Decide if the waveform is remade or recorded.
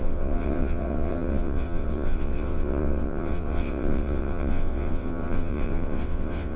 remade